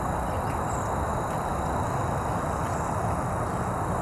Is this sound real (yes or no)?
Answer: yes